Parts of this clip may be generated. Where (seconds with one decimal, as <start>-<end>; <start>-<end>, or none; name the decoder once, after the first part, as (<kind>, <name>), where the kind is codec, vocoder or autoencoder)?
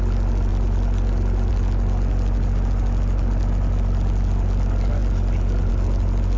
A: 0.5-1.5 (vocoder, BigVGAN v2)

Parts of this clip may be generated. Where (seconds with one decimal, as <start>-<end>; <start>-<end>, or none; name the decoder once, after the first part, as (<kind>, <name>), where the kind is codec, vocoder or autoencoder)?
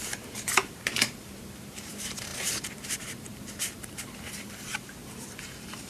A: 0.0-5.9 (vocoder, BigVGAN v2)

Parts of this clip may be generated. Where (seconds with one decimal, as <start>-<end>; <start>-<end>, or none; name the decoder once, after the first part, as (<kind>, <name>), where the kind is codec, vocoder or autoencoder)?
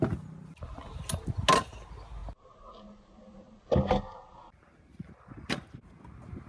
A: none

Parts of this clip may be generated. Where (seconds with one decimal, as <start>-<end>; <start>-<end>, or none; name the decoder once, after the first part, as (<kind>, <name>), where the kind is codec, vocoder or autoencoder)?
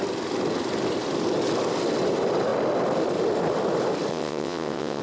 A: 4.1-5.0 (vocoder, WaveNeXt)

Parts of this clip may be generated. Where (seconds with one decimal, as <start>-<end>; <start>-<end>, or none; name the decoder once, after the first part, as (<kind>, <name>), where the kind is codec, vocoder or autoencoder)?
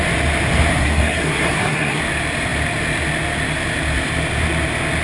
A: 0.7-2.0 (codec, SNAC)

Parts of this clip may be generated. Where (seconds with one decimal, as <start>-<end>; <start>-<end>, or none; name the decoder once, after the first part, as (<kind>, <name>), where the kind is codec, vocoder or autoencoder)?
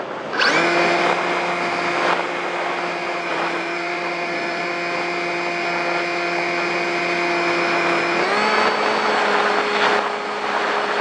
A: 3.3-4.7 (vocoder, BigVGAN v2)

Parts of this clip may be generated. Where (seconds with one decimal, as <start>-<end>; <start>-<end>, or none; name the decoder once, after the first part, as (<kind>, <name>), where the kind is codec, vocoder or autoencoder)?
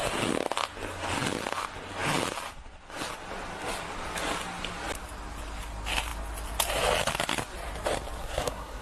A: 8.2-8.8 (codec, SNAC)